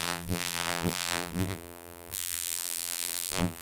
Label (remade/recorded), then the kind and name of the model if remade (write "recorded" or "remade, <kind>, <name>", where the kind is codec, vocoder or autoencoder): remade, vocoder, BigVGAN v2